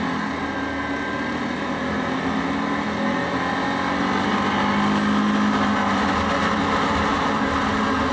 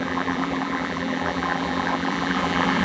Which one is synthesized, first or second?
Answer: second